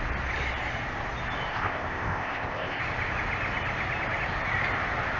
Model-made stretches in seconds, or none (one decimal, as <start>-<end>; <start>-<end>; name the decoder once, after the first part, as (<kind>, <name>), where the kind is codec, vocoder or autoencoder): 1.5-2.8 (codec, ZipCodec)